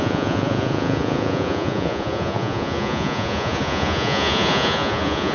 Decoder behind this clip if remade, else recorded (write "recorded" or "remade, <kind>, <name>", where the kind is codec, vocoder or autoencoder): remade, vocoder, Vocos